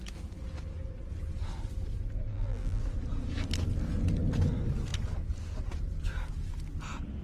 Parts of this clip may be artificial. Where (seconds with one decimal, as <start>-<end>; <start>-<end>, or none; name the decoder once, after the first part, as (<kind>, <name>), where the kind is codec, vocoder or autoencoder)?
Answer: 2.3-2.8 (vocoder, BigVGAN v2)